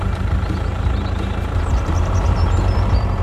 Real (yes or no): no